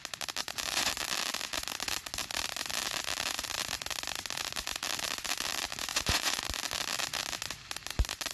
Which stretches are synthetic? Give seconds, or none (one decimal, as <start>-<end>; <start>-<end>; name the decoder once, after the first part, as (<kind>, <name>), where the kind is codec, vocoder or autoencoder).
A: 0.4-0.9 (vocoder, Vocos); 5.9-6.4